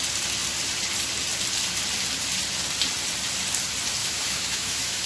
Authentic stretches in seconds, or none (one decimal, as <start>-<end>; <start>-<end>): 0.0-4.0